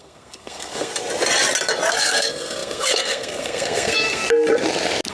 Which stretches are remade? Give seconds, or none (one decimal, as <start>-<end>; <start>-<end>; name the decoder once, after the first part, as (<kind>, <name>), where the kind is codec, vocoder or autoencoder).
0.0-0.9 (codec, SNAC); 1.9-4.2